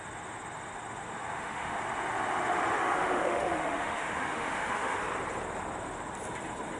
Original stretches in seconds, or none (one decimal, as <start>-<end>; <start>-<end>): 0.0-1.3; 1.8-2.8; 5.0-6.8